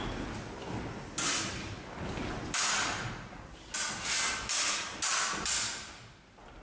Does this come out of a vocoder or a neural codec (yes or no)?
no